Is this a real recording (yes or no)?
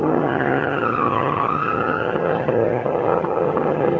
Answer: no